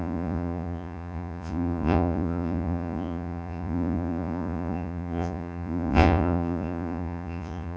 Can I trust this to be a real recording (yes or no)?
no